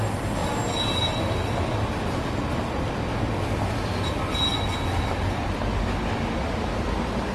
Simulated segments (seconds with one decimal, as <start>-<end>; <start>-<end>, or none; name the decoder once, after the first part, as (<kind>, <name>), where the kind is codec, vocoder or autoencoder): none